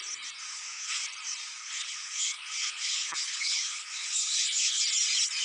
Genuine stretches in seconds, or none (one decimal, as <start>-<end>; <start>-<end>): 0.0-0.5; 1.0-1.6; 4.8-5.4